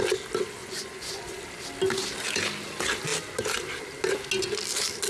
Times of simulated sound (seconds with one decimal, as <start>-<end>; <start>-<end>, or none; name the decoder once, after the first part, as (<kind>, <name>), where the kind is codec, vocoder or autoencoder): 0.6-1.4 (vocoder, Vocos)